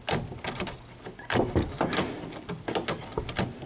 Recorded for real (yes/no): yes